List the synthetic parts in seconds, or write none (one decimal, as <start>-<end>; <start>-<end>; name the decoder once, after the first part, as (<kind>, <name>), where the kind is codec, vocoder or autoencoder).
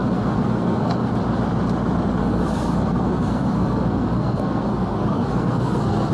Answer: 0.0-1.1 (codec, SNAC); 2.2-6.1